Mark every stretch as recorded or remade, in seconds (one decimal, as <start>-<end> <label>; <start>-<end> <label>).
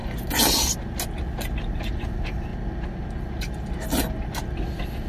0.0-5.1 recorded